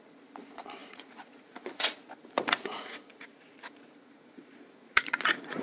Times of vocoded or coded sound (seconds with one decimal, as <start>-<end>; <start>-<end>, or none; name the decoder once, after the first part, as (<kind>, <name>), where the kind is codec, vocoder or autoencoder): 0.0-5.6 (vocoder, Vocos)